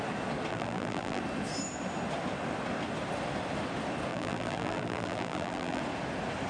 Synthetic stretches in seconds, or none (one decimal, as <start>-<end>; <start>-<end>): 0.5-1.2; 4.1-5.8